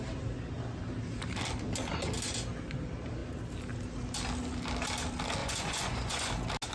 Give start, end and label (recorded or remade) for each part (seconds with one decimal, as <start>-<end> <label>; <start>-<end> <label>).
0.0-5.4 recorded; 5.4-6.3 remade; 6.3-6.7 recorded